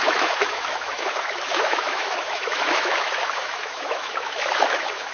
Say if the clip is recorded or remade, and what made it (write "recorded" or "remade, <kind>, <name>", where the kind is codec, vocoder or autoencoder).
remade, autoencoder, DAC-VAE